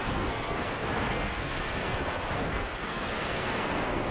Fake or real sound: fake